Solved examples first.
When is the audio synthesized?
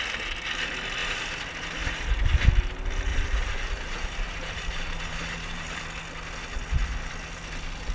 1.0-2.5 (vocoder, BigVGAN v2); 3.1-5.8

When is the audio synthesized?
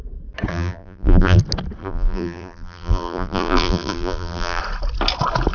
0.5-1.4 (vocoder, BigVGAN v2); 1.8-4.6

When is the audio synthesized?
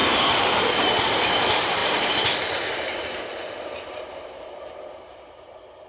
0.0-5.9 (vocoder, BigVGAN v2)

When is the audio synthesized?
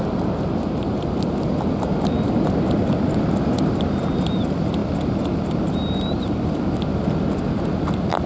0.0-4.8 (vocoder, BigVGAN v2); 5.6-6.9; 7.5-8.3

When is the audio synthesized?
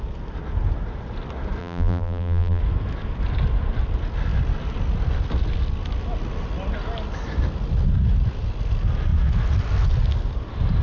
1.6-2.6 (vocoder, BigVGAN v2)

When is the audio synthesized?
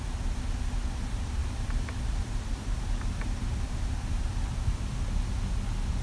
1.4-5.0 (vocoder, BigVGAN v2)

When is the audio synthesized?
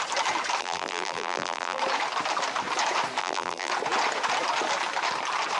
0.6-1.8 (vocoder, BigVGAN v2); 3.2-3.7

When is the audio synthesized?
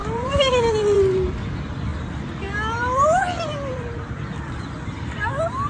0.0-1.5 (vocoder, BigVGAN v2); 1.9-5.3